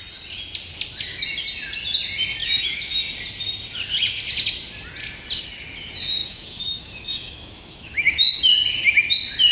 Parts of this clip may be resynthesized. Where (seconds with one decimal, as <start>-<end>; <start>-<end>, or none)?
2.4-3.0; 6.2-8.4

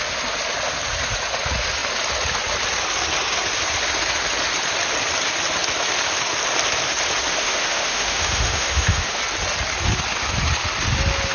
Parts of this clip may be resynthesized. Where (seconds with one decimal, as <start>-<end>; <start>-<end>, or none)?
7.3-9.2

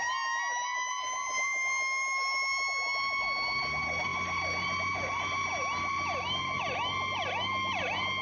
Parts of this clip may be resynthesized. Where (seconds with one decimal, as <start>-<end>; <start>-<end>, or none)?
none

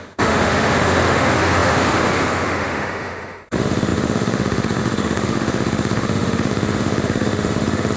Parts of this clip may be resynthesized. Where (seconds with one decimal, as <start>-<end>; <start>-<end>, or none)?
0.0-8.0

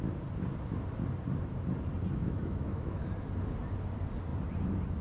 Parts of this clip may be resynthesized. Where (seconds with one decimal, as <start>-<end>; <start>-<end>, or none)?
2.2-3.1

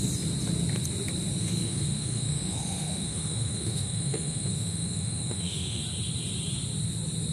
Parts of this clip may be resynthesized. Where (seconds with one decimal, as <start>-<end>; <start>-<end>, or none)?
1.4-5.8

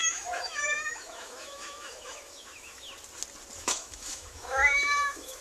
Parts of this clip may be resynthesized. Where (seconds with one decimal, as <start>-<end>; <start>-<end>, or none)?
0.0-2.9; 3.6-5.4

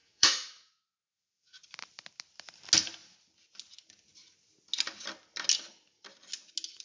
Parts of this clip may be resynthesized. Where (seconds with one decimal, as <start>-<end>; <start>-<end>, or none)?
0.0-1.5